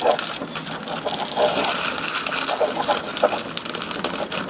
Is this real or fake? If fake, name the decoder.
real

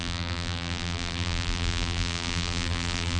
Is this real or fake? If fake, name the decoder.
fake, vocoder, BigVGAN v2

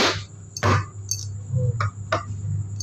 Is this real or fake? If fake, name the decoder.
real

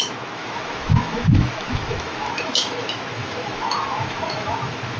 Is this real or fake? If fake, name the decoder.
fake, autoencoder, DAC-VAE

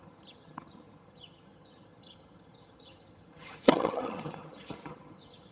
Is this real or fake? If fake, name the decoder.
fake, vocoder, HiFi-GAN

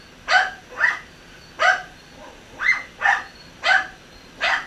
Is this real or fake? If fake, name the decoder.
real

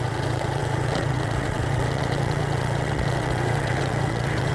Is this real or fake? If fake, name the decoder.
fake, vocoder, WaveNeXt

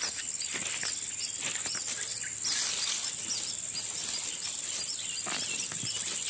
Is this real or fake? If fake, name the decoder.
real